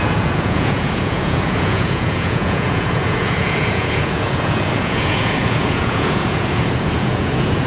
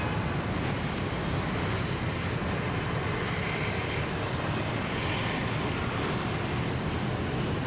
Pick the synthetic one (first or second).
first